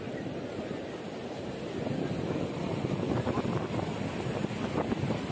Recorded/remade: recorded